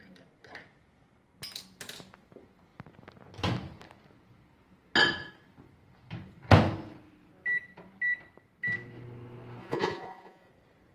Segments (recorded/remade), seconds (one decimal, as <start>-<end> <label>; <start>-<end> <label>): 0.0-9.6 recorded; 9.6-10.5 remade; 10.5-10.9 recorded